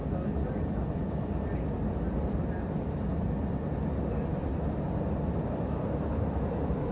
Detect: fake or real real